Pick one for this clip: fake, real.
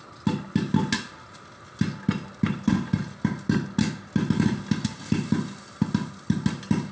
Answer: real